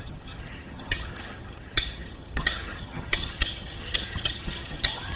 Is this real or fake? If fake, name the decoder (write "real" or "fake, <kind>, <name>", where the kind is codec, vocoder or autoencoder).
fake, vocoder, HiFi-GAN